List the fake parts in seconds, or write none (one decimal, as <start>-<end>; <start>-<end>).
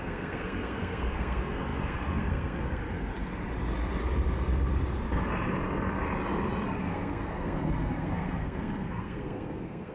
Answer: 0.0-2.8; 6.8-9.9